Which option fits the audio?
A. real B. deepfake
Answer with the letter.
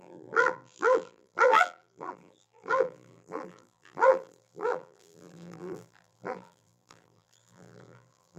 B